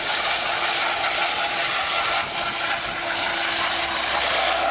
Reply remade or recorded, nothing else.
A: recorded